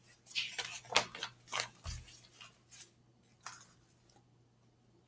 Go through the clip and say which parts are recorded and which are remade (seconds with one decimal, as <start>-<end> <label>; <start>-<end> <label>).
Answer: 0.0-5.1 recorded